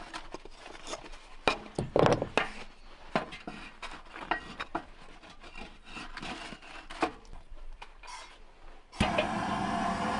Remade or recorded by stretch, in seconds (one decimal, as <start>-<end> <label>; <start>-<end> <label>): 0.0-7.3 recorded; 7.3-8.0 remade; 8.0-10.2 recorded